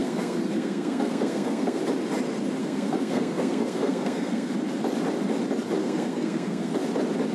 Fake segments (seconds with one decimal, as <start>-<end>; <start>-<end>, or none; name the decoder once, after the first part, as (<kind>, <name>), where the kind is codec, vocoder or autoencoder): 0.0-1.8 (codec, SNAC); 2.6-4.5; 5.8-6.7